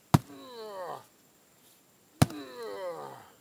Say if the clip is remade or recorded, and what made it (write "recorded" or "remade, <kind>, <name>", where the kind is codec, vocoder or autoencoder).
recorded